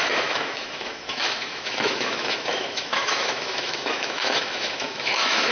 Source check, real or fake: fake